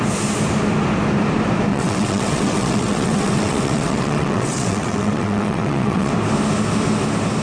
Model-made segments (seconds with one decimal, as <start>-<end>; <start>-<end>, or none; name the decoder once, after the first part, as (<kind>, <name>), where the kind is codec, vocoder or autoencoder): 1.7-6.1 (vocoder, WaveNeXt)